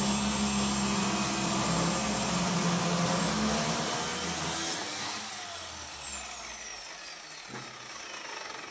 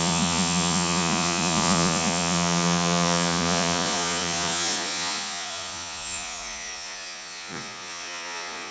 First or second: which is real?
first